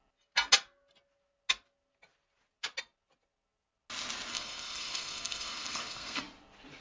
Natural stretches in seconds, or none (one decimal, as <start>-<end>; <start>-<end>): 0.0-4.3; 6.2-6.8